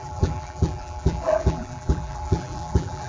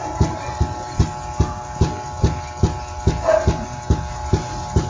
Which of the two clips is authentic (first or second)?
second